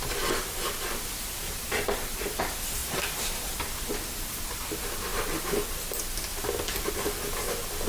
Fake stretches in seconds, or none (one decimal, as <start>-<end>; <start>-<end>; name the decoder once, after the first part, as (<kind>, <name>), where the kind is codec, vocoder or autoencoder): 1.6-2.4 (vocoder, BigVGAN v2); 2.8-3.5